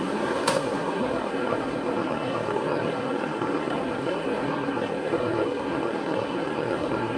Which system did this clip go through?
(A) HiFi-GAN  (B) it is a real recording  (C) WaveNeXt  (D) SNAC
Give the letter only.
D